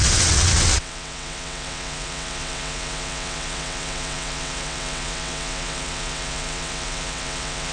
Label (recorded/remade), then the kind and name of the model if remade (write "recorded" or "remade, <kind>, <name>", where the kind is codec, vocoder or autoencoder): remade, vocoder, WaveNeXt